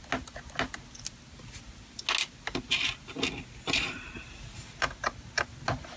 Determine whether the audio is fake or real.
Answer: real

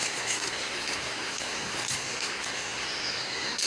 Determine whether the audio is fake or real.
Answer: fake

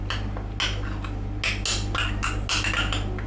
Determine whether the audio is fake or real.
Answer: real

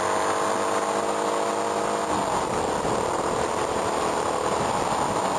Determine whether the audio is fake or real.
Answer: real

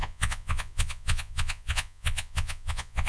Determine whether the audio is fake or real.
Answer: fake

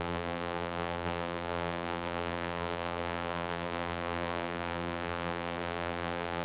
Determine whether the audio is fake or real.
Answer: fake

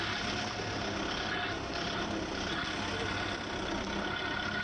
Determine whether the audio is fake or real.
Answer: real